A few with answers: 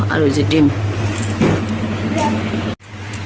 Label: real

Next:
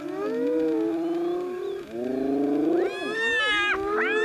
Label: real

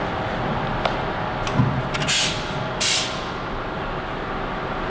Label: real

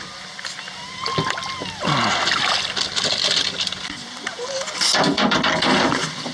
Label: fake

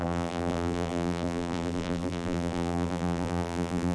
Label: fake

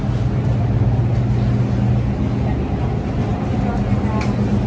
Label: real